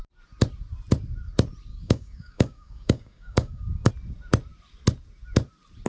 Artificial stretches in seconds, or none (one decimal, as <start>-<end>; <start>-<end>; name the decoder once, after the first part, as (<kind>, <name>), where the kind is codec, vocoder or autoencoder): 1.7-3.9 (codec, DAC)